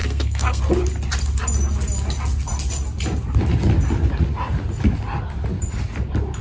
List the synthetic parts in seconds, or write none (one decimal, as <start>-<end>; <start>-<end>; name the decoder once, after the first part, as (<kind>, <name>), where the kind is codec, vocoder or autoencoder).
0.0-0.6 (codec, SNAC)